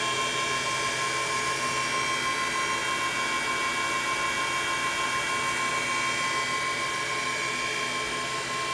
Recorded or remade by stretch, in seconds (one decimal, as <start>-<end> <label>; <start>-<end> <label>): 0.0-8.7 recorded